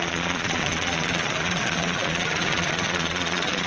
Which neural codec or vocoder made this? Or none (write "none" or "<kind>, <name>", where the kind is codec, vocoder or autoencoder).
vocoder, Vocos